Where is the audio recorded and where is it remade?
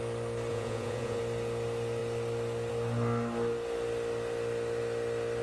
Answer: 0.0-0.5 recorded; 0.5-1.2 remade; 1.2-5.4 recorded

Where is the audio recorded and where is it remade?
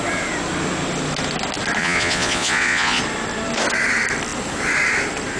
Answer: 0.0-1.8 recorded; 1.8-3.0 remade; 3.0-5.4 recorded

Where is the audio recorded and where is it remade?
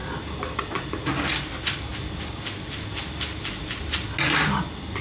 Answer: 0.0-5.0 recorded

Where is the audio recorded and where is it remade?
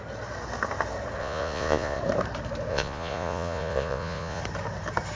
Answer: 0.0-1.2 recorded; 1.2-2.0 remade; 2.0-2.7 recorded; 2.7-4.4 remade; 4.4-5.2 recorded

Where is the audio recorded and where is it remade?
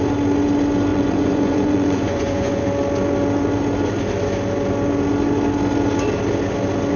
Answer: 0.0-0.9 recorded; 0.9-2.6 remade; 2.6-7.0 recorded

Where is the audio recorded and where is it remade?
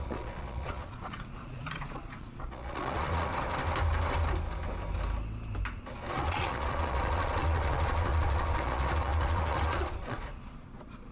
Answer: 0.0-3.3 remade; 3.3-6.1 recorded; 6.1-11.1 remade